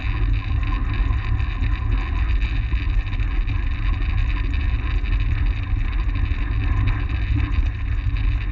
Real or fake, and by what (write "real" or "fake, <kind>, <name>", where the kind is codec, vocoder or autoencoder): real